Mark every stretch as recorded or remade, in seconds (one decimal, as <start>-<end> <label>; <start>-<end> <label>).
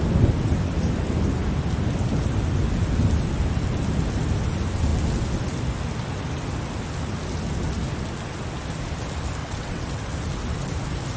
0.0-9.4 recorded; 9.4-10.0 remade; 10.0-11.2 recorded